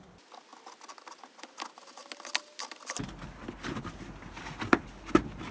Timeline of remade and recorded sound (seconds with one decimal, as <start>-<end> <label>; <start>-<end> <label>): 0.0-5.5 recorded